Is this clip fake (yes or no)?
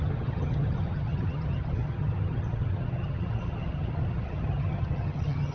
yes